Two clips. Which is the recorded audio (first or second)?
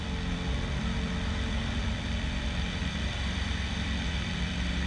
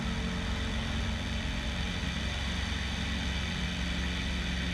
second